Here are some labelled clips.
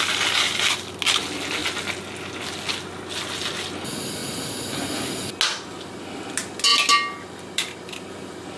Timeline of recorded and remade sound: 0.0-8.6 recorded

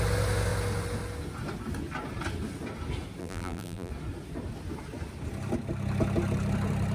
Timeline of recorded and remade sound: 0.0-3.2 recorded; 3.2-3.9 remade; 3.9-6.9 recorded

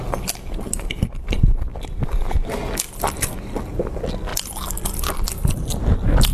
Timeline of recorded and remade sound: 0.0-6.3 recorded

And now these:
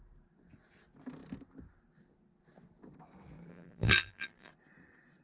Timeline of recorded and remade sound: 0.0-3.5 recorded; 3.5-4.5 remade; 4.5-5.2 recorded

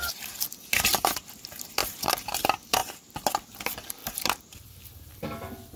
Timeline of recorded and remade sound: 0.0-1.8 recorded; 1.8-2.4 remade; 2.4-4.0 recorded; 4.0-5.1 remade; 5.1-5.8 recorded

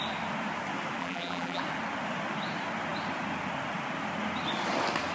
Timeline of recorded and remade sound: 0.0-1.0 recorded; 1.0-1.6 remade; 1.6-5.1 recorded

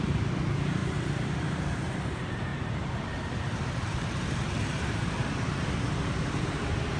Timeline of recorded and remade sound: 0.0-7.0 remade

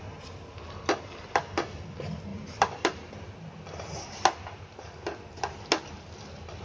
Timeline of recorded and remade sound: 0.0-2.3 recorded; 2.3-3.1 remade; 3.1-6.6 recorded